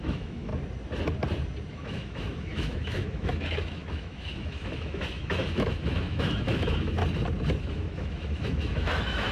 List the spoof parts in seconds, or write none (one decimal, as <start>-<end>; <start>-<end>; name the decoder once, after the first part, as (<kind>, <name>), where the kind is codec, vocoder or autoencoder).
0.0-0.5 (autoencoder, DAC-VAE); 1.7-7.0; 7.6-9.3